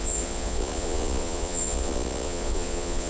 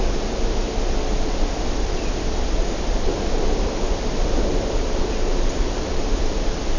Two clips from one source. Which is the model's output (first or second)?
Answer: first